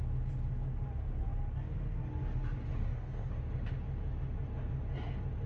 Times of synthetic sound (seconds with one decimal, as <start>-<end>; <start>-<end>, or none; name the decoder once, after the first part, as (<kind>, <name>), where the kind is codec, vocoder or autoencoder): 2.8-3.3 (codec, DAC)

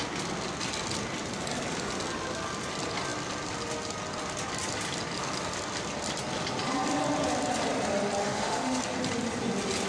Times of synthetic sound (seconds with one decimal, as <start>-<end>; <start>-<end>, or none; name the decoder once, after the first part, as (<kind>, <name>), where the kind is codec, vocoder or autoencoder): 8.2-8.8 (autoencoder, DAC-VAE)

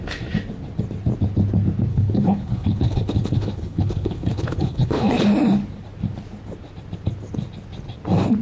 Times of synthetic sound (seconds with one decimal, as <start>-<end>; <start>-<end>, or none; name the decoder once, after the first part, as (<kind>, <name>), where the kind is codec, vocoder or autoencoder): 1.9-5.1 (codec, HILCodec)

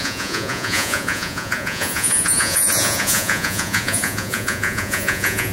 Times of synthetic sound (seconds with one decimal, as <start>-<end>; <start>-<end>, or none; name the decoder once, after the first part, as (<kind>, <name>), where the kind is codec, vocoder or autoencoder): 0.0-5.5 (vocoder, Vocos)